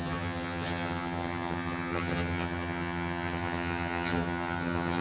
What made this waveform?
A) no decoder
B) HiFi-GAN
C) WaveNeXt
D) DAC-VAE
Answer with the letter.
B